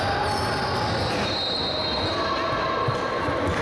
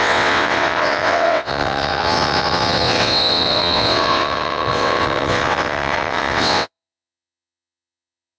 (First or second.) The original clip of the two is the first